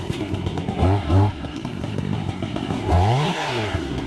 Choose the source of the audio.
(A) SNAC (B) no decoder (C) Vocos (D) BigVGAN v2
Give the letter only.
A